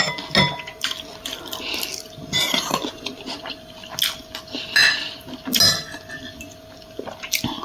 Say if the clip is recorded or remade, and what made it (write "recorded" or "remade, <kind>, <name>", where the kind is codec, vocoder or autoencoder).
recorded